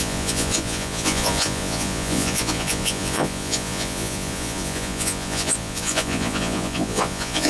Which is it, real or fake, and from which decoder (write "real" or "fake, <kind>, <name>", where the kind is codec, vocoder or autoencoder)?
fake, vocoder, Vocos